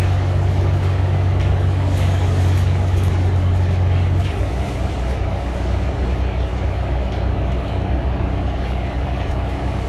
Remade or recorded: remade